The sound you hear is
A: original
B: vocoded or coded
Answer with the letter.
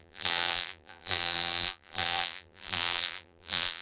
B